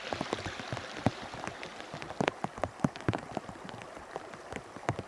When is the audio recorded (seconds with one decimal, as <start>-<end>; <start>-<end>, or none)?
0.0-5.1